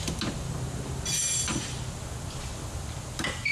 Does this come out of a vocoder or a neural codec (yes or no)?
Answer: no